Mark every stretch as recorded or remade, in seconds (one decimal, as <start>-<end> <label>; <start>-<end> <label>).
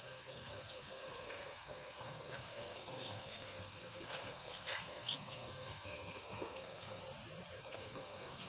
0.0-7.0 remade; 7.0-7.6 recorded; 7.6-8.5 remade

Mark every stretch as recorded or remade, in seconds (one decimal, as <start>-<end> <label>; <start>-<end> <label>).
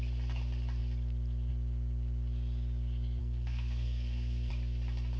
0.0-3.2 recorded; 3.2-4.5 remade; 4.5-5.2 recorded